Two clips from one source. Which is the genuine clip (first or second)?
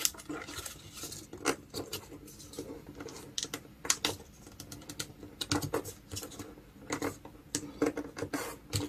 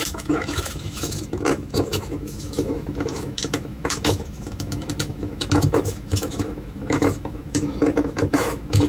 first